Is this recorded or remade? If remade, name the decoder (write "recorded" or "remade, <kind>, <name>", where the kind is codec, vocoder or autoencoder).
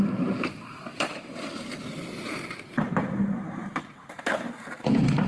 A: remade, vocoder, BigVGAN v2